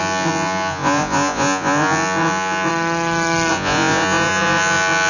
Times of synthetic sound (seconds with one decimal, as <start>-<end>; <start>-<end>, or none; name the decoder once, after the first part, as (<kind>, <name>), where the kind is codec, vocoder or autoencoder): 0.0-2.7 (vocoder, Vocos); 3.5-5.1